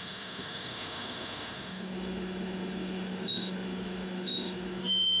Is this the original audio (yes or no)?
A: no